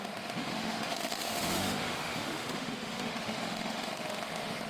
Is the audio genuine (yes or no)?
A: no